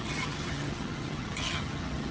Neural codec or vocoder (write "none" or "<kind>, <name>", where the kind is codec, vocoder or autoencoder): vocoder, HiFi-GAN